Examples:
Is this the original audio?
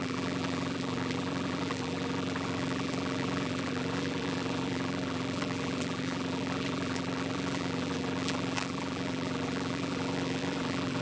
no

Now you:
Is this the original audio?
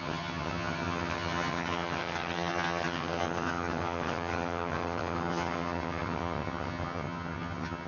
no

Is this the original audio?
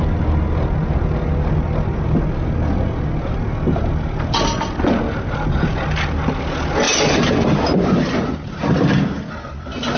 yes